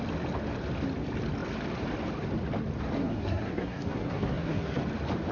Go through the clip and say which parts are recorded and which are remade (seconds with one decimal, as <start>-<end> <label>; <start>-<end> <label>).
0.0-3.0 recorded; 3.0-4.8 remade; 4.8-5.3 recorded